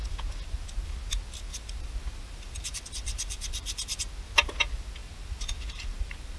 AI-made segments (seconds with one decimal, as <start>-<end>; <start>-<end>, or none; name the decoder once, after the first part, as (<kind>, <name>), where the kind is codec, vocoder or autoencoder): 1.5-4.0 (vocoder, BigVGAN v2); 5.0-6.4